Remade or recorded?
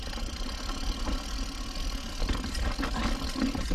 recorded